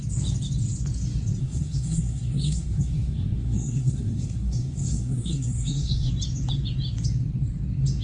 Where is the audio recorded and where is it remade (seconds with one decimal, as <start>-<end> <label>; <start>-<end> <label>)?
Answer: 0.0-1.4 recorded; 1.4-6.1 remade; 6.1-8.0 recorded